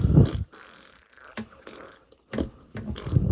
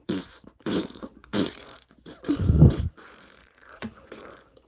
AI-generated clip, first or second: second